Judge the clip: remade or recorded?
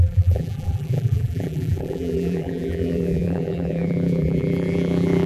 remade